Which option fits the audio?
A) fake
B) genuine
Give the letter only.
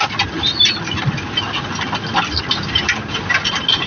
B